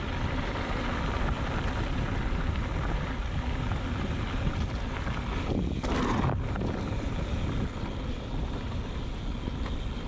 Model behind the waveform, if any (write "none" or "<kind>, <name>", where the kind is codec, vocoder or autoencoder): none